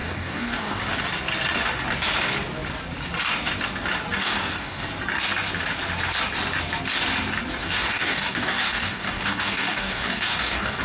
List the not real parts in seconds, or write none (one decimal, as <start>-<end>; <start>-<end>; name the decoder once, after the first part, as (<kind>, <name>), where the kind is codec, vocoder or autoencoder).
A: 0.0-0.8 (codec, DAC); 4.2-4.9; 7.6-10.8